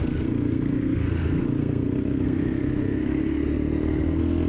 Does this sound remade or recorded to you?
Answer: remade